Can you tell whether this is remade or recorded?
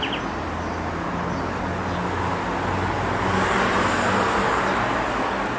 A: recorded